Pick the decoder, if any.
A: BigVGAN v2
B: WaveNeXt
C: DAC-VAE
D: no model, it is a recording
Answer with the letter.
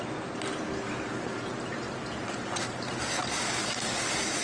D